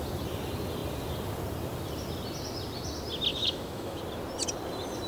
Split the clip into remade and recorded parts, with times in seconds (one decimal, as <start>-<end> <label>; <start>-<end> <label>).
0.0-3.3 recorded; 3.3-4.0 remade; 4.0-5.1 recorded